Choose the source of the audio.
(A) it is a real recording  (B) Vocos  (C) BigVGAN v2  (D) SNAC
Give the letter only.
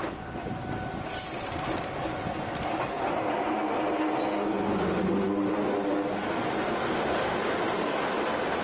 A